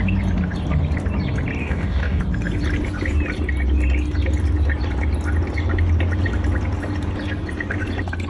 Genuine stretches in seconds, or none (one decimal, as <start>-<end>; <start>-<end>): 0.0-1.6; 2.2-8.3

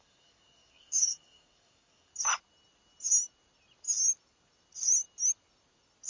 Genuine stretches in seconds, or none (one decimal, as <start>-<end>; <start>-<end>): 2.1-6.1

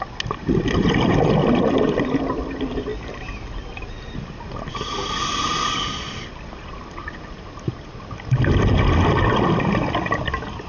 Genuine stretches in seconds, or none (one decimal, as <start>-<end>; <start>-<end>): 0.0-10.7

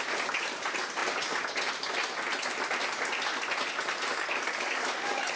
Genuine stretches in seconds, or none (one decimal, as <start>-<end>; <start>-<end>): 0.0-4.1

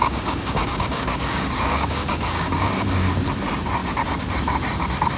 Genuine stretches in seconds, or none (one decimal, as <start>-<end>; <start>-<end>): 3.1-5.2

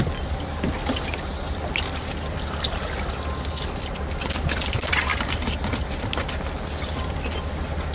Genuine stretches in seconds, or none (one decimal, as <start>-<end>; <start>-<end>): 0.0-7.9

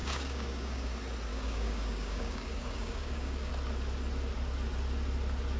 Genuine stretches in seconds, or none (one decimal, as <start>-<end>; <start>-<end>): 0.9-1.3; 3.5-5.6

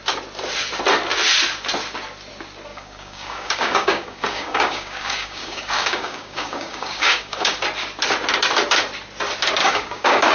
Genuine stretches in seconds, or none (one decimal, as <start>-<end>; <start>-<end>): 0.0-2.7; 7.6-9.6